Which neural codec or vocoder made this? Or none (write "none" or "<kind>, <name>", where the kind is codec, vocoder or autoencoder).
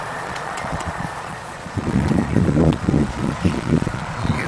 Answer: vocoder, Vocos